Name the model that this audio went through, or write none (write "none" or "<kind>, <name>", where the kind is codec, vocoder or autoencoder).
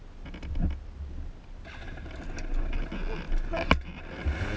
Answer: none